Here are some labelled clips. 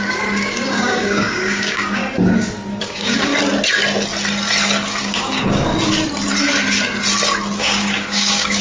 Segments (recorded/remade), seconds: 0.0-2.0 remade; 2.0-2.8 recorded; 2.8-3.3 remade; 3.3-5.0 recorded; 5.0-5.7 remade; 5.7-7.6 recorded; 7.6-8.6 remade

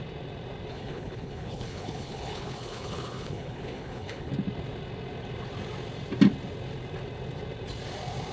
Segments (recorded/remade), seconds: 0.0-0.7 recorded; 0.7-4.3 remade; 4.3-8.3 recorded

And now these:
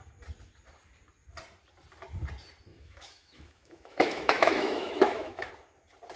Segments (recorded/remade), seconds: 0.0-2.7 recorded; 2.7-5.5 remade; 5.5-6.2 recorded